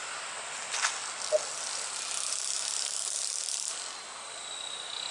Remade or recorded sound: recorded